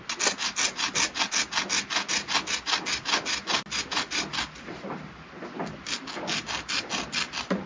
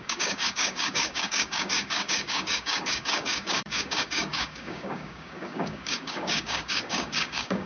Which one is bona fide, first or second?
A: first